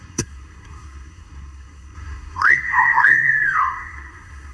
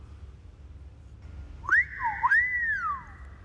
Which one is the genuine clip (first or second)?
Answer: second